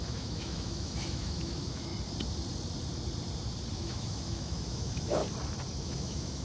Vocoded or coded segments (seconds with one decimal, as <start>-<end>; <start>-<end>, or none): 0.0-1.9; 3.7-5.2; 5.8-6.4